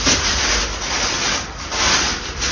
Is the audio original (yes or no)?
yes